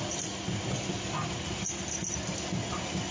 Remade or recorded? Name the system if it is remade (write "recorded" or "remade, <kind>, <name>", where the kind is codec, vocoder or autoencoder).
recorded